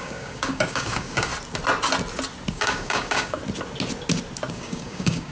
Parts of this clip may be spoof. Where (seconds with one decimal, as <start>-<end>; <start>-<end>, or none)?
0.0-1.3; 2.5-3.4; 4.5-5.3